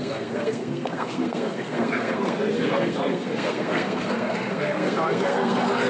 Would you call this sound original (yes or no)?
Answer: no